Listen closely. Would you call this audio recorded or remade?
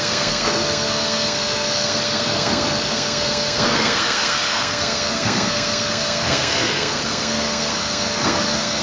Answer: remade